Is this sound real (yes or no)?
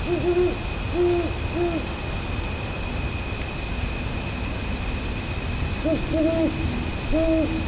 yes